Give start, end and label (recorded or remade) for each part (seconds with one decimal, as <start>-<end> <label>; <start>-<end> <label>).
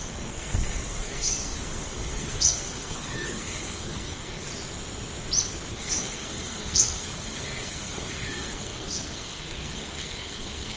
0.0-4.5 remade; 4.5-5.7 recorded; 5.7-10.8 remade